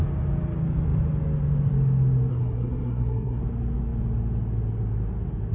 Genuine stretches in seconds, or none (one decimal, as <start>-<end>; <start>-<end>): 0.0-2.3; 3.4-5.5